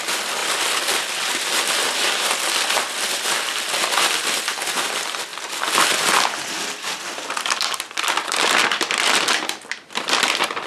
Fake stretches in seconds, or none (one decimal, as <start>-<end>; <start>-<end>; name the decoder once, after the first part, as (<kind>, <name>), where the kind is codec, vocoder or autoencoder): 0.0-10.7 (vocoder, BigVGAN v2)